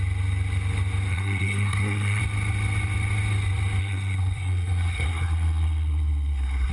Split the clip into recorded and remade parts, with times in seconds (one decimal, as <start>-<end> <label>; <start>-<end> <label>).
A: 0.0-1.1 recorded; 1.1-2.2 remade; 2.2-3.8 recorded; 3.8-6.7 remade

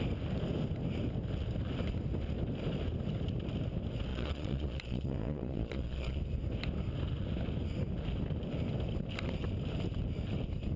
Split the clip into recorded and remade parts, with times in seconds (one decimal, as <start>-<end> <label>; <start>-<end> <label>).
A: 0.0-4.1 recorded; 4.1-6.2 remade; 6.2-10.8 recorded

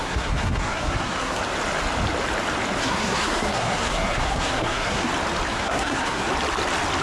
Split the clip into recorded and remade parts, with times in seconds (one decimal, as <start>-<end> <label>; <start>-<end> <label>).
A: 0.0-1.4 remade; 1.4-2.8 recorded; 2.8-5.1 remade; 5.1-5.5 recorded; 5.5-6.3 remade; 6.3-7.0 recorded

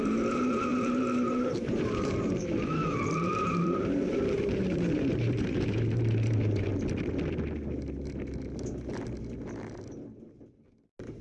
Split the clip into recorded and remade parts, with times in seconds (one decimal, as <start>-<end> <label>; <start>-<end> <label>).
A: 0.0-6.7 remade; 6.7-11.2 recorded

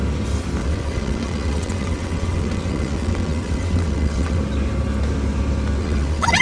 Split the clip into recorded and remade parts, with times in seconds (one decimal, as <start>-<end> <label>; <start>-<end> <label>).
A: 0.0-0.6 recorded; 0.6-4.4 remade; 4.4-5.8 recorded; 5.8-6.4 remade

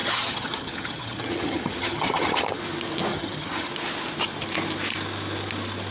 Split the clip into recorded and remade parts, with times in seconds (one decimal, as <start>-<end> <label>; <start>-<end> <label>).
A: 0.0-2.6 remade; 2.6-3.1 recorded; 3.1-3.7 remade; 3.7-5.9 recorded

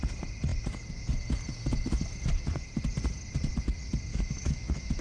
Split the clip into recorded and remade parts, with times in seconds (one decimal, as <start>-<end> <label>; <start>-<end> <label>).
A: 0.0-4.1 recorded; 4.1-5.0 remade

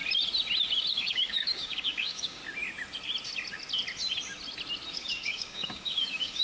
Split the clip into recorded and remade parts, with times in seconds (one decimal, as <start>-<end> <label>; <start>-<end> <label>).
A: 0.0-0.9 recorded; 0.9-2.4 remade; 2.4-4.9 recorded; 4.9-6.4 remade